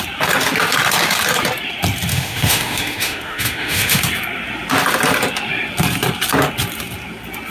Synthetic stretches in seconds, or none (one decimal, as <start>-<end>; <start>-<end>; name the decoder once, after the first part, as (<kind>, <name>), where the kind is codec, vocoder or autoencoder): 2.1-4.0 (autoencoder, DAC-VAE)